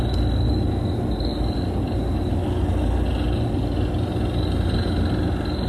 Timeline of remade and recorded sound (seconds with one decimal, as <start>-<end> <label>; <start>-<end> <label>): 0.0-5.7 recorded